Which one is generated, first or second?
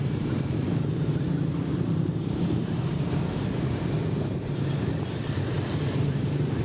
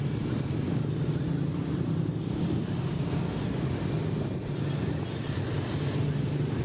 first